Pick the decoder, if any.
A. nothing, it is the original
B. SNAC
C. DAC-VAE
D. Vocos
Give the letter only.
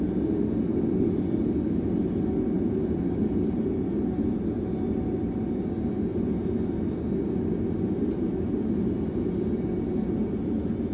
A